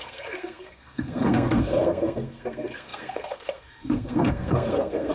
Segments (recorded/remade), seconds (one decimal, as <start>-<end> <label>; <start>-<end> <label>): 0.0-5.1 remade